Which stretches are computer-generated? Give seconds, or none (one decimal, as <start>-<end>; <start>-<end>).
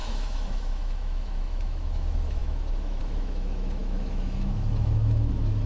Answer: 0.0-5.7